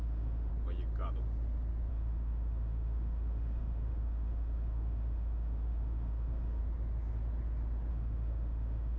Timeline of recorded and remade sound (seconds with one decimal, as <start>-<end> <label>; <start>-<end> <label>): 0.0-0.5 remade; 0.5-1.9 recorded; 1.9-6.6 remade; 6.6-7.9 recorded; 7.9-9.0 remade